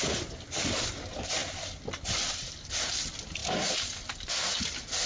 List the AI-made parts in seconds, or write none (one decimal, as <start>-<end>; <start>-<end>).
none